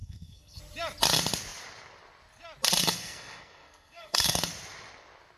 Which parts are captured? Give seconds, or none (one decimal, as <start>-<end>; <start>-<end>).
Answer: 0.6-2.8; 4.4-5.4